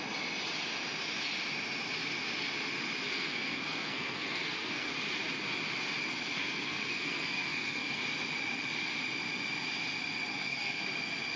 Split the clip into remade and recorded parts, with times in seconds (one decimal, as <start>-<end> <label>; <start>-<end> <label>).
0.0-3.1 recorded; 3.1-4.9 remade; 4.9-6.1 recorded; 6.1-8.0 remade; 8.0-10.3 recorded; 10.3-10.8 remade; 10.8-11.4 recorded